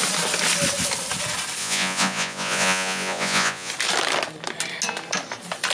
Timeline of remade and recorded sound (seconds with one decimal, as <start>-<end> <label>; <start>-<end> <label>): 0.0-1.6 recorded; 1.6-3.7 remade; 3.7-5.7 recorded